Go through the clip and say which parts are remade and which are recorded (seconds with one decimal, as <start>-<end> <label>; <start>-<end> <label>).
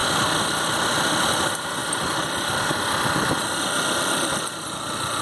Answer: 0.0-5.2 recorded